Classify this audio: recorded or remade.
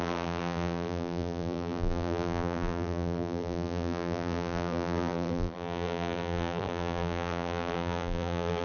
remade